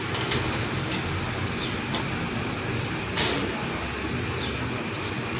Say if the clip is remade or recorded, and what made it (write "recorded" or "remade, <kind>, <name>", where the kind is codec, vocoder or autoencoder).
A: recorded